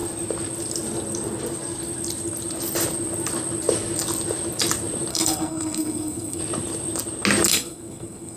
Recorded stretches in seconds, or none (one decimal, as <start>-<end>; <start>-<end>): 0.0-5.1; 6.4-7.5